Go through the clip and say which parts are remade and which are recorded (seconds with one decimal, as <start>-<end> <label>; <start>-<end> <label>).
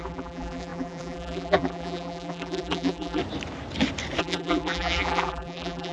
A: 0.0-3.2 remade; 3.2-4.2 recorded; 4.2-5.9 remade